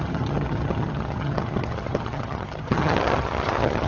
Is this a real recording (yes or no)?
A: no